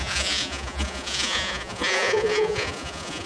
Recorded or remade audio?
remade